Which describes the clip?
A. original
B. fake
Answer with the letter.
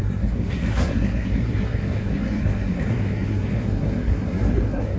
B